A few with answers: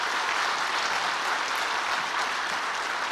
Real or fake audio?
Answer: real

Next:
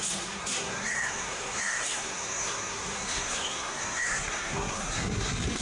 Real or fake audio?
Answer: fake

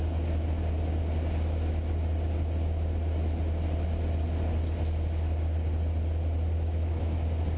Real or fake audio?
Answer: real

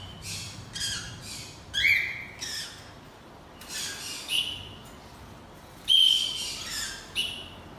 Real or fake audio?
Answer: real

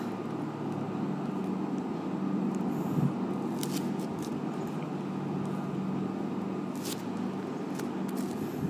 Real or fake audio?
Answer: real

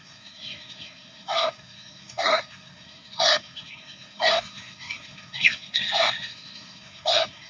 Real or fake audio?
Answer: fake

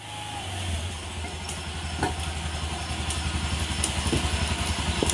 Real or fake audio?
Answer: real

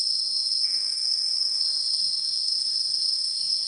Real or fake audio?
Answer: fake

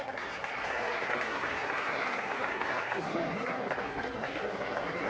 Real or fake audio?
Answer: fake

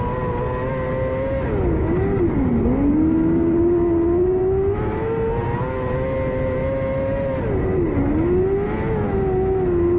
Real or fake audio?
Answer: real